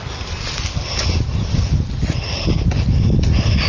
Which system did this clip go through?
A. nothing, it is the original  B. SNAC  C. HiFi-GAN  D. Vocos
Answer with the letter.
A